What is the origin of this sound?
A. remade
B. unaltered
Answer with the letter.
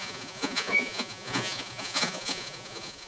A